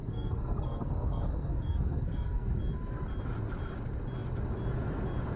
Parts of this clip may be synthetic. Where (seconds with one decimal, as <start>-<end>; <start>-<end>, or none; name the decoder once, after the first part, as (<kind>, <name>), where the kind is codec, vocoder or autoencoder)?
0.0-2.6 (codec, SNAC)